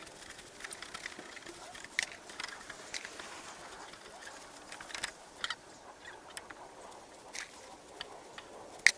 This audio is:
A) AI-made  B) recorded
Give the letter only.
B